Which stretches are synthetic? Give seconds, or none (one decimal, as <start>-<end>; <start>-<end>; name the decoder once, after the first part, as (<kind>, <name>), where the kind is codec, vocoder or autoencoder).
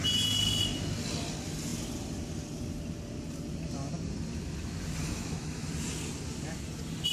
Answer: 5.0-5.7 (autoencoder, DAC-VAE)